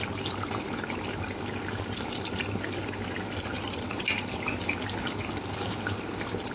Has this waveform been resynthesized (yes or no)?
no